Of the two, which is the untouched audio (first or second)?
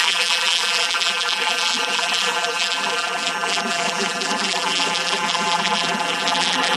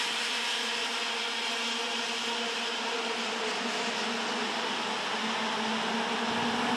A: second